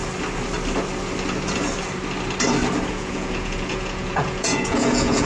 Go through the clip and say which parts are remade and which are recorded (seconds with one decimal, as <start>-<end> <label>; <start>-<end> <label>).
0.0-2.9 recorded; 2.9-5.3 remade